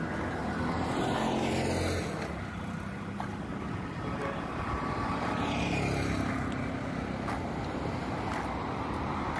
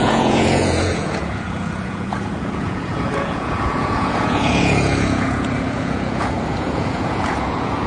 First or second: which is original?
first